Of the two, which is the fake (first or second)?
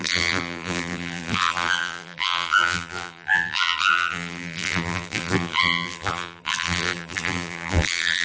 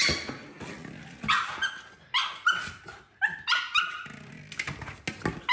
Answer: first